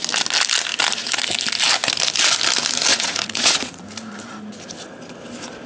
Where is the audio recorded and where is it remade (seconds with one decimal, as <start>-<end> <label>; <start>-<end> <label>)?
0.0-2.9 recorded; 2.9-3.8 remade; 3.8-5.7 recorded